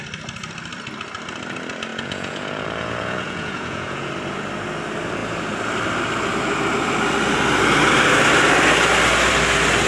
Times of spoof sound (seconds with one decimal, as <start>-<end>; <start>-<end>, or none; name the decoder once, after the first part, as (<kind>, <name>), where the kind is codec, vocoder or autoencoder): 1.9-4.1 (vocoder, Vocos)